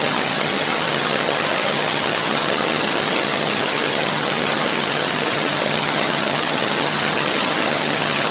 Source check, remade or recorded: remade